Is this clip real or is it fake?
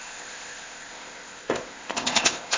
fake